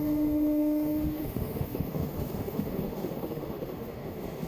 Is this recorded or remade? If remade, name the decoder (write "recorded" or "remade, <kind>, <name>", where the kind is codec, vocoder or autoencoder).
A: remade, autoencoder, DAC-VAE